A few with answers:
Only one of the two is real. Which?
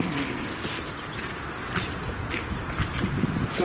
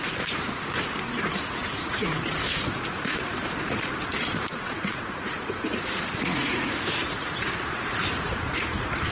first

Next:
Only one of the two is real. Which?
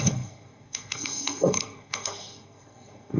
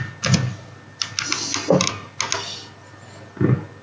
second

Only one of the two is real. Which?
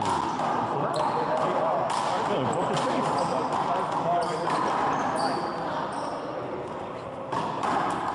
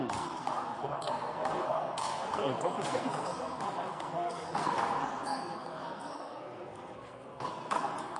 first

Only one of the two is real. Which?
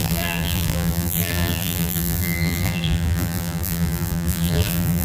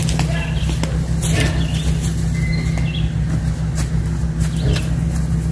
second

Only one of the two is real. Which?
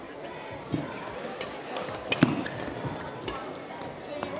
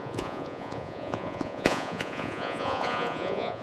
first